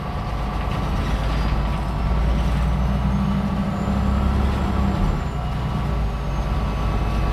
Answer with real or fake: real